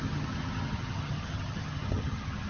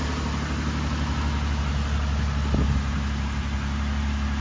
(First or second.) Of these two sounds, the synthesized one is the first